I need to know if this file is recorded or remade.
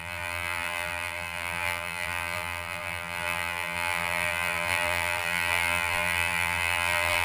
remade